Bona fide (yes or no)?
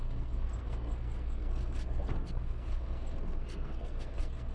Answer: no